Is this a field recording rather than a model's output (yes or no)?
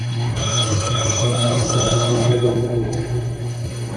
no